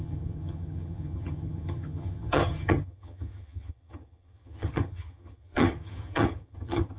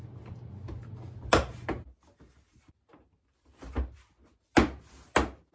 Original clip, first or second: second